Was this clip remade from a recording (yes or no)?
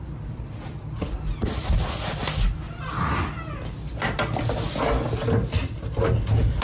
no